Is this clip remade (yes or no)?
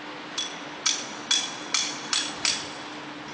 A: no